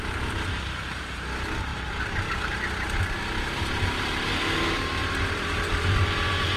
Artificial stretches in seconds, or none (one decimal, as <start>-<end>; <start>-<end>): 1.7-2.5; 5.0-5.6